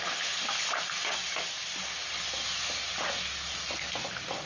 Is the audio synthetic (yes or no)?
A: no